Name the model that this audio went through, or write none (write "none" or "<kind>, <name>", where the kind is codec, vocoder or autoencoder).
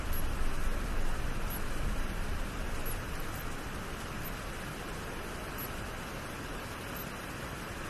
none